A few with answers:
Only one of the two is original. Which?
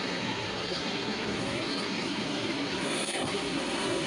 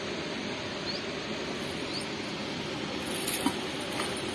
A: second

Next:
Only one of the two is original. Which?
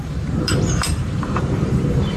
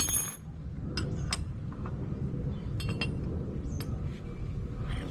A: second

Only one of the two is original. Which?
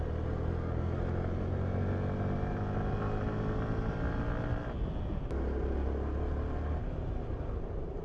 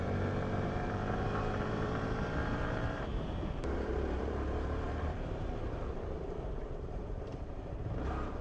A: first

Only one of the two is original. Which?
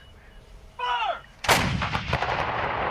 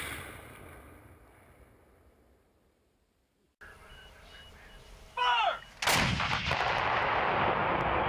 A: second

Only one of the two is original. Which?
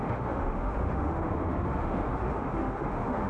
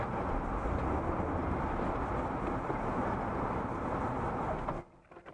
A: second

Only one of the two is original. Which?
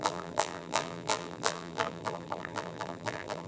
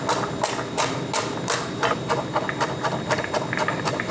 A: second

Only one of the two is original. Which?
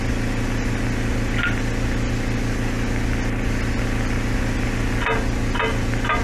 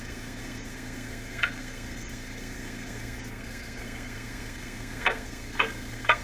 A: first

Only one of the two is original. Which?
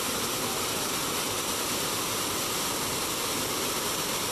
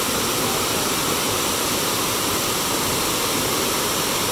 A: first